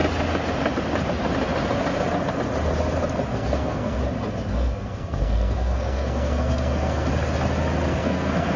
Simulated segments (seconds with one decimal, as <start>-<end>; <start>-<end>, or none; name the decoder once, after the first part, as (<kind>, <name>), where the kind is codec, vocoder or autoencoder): 3.3-4.0 (codec, SNAC); 4.5-7.1; 7.9-8.6